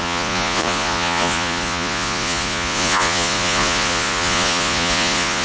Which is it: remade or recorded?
remade